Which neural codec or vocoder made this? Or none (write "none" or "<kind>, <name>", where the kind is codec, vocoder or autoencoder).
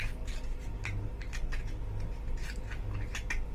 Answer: none